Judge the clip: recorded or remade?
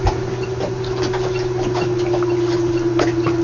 recorded